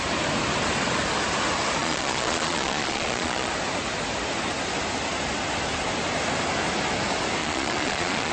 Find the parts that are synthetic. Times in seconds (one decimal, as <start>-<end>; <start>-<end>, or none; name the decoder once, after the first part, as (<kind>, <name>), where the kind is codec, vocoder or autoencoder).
1.8-3.5 (vocoder, Vocos); 7.4-8.3